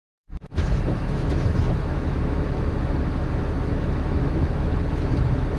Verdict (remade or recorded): remade